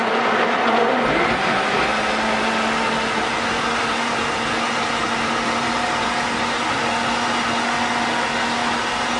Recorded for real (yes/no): yes